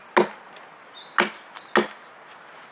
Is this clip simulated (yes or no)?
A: no